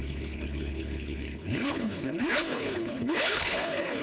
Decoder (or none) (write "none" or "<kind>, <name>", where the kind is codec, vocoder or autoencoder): codec, HILCodec